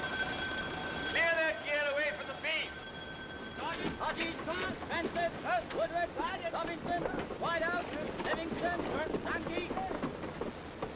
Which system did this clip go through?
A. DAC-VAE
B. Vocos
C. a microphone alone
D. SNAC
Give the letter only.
C